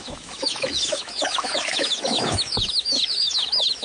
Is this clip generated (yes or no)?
yes